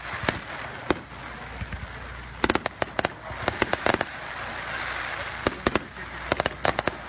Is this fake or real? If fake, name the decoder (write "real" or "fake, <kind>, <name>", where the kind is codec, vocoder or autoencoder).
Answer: real